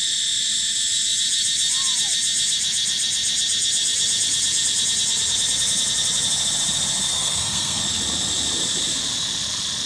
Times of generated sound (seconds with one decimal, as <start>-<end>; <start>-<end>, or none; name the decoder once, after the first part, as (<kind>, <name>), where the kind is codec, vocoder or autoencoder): 7.1-7.8 (codec, SNAC)